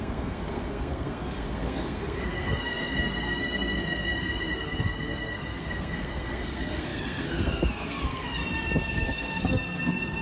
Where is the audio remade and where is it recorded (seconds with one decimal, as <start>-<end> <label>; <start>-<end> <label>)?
0.0-8.4 remade; 8.4-8.9 recorded; 8.9-10.2 remade